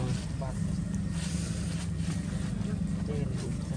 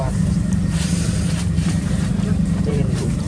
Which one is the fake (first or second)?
second